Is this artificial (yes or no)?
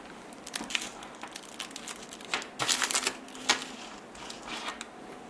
no